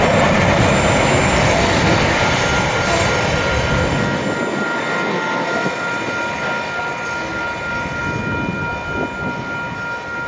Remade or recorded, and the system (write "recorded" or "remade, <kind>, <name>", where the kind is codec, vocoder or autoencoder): recorded